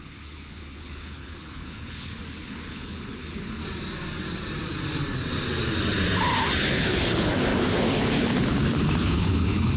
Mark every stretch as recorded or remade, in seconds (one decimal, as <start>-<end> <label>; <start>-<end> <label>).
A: 0.0-3.6 remade; 3.6-6.7 recorded; 6.7-9.8 remade